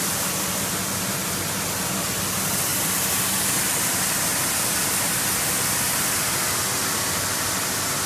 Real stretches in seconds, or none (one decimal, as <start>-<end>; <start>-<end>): 0.0-8.1